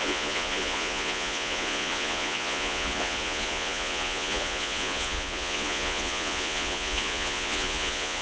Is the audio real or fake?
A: fake